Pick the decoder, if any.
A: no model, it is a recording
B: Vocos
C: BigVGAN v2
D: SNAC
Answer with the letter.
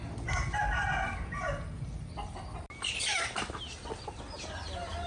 A